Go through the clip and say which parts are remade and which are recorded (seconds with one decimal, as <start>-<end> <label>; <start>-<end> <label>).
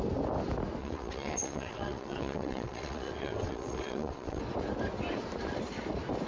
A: 0.0-0.8 recorded; 0.8-4.4 remade; 4.4-6.3 recorded